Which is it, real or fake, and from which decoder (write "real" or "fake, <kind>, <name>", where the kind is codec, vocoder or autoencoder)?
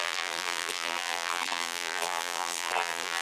fake, vocoder, BigVGAN v2